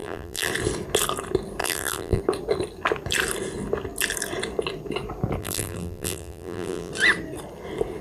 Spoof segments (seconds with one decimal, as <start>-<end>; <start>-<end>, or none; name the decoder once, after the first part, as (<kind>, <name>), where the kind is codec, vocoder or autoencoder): 0.0-0.5 (vocoder, BigVGAN v2); 1.6-2.2; 5.4-6.9